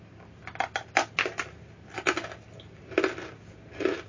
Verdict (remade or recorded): recorded